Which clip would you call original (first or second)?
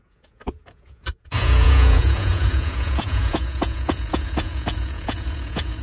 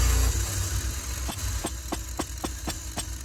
second